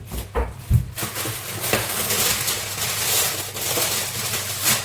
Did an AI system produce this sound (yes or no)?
no